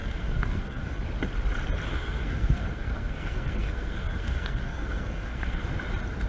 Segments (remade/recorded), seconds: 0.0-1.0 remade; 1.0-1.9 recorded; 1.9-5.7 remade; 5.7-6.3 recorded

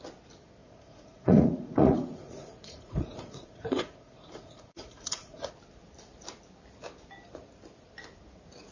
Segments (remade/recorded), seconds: 0.0-0.6 recorded; 0.6-5.5 remade; 5.5-8.7 recorded

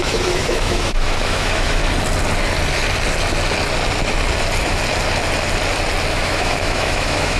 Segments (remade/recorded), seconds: 0.0-1.8 remade; 1.8-6.1 recorded; 6.1-7.4 remade